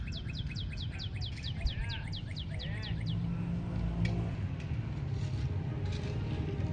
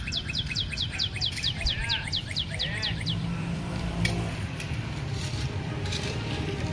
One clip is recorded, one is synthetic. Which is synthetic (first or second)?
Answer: second